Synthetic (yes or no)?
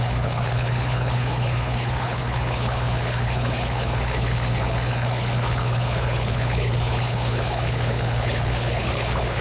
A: yes